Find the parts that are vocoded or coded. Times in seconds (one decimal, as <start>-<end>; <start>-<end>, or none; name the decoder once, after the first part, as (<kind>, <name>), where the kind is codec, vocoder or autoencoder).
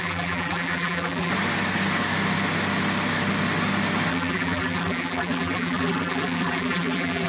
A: 0.0-1.3 (vocoder, BigVGAN v2); 4.1-7.3